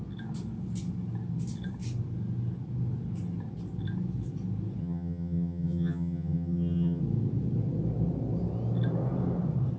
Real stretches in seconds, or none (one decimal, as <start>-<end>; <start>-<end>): 0.0-4.8; 7.0-9.8